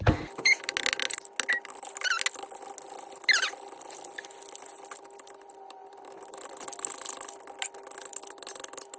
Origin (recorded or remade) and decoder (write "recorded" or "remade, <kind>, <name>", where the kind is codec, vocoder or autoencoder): recorded